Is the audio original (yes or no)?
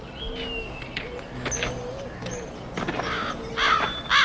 yes